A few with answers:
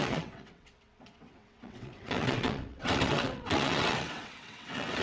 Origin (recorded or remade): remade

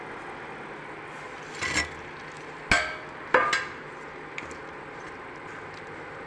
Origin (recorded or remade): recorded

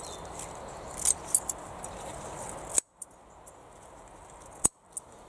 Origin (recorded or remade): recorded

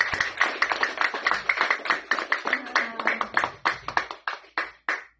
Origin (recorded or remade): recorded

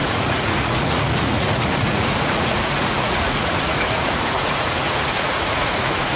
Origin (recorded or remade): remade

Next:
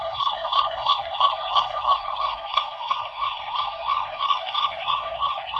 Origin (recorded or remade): remade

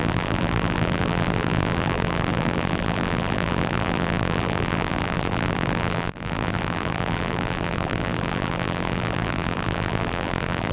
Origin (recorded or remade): remade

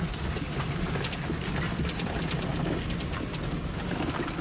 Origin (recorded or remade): recorded